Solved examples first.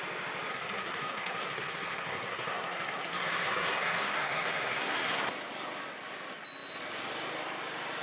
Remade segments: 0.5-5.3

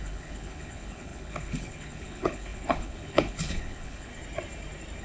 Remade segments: 0.0-4.1

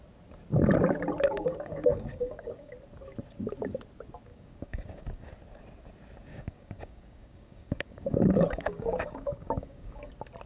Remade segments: 1.3-2.7; 4.3-5.3; 6.3-10.1

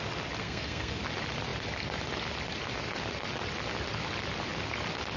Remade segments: 0.4-1.0